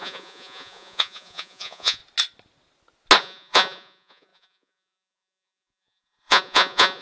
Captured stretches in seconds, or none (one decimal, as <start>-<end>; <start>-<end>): 2.0-3.2